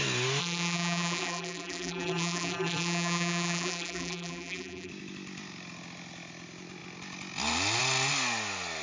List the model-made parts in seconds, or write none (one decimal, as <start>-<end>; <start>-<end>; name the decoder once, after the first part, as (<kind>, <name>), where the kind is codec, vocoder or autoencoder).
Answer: 0.4-4.9 (vocoder, BigVGAN v2)